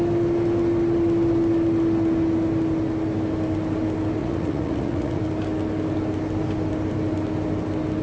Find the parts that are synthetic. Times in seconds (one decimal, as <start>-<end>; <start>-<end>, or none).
4.2-5.2